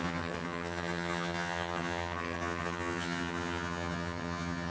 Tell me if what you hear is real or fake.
fake